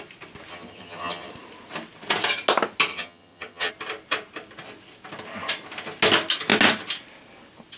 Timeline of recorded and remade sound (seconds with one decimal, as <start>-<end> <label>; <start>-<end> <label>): 0.0-0.5 recorded; 0.5-1.3 remade; 1.3-2.9 recorded; 2.9-3.7 remade; 3.7-7.8 recorded